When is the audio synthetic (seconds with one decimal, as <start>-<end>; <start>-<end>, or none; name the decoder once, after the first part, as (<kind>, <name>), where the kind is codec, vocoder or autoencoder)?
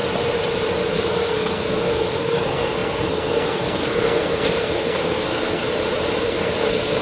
0.9-5.6 (codec, SNAC); 6.2-7.0